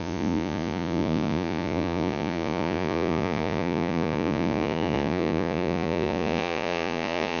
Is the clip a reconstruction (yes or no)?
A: yes